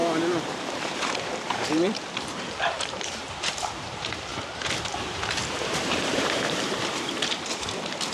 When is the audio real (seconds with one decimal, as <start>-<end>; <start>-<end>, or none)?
4.3-4.8